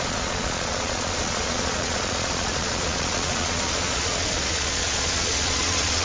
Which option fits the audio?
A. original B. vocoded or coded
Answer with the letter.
B